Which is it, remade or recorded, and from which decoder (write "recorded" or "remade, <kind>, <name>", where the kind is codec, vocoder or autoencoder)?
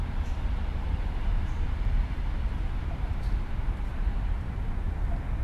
remade, vocoder, BigVGAN v2